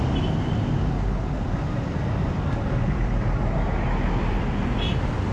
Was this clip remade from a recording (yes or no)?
no